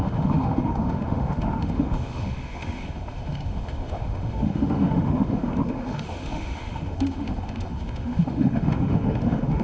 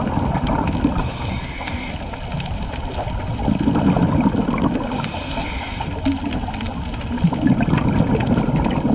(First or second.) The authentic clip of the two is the second